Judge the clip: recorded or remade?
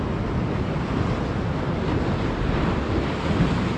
recorded